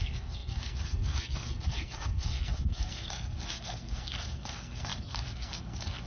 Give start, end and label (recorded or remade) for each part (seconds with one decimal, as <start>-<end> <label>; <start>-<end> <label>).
0.0-6.1 remade